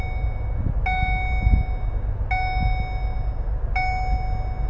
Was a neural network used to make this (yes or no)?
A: no